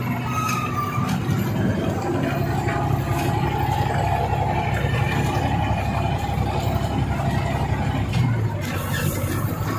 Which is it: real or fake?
real